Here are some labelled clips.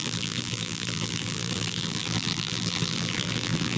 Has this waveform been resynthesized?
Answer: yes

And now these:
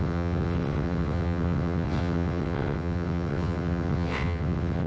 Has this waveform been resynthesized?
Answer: yes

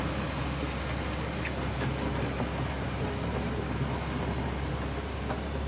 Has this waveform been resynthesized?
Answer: no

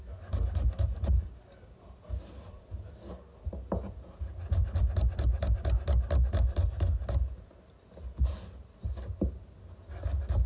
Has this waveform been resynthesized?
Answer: no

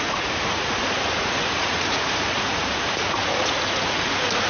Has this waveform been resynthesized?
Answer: yes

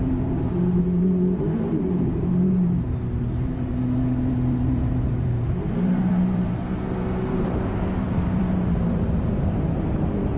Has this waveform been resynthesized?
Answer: yes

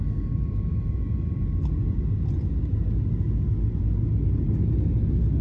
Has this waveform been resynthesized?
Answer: no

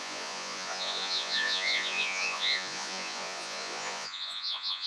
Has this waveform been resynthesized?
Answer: yes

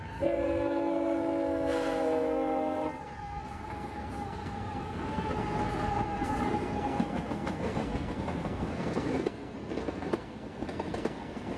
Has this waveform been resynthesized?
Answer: yes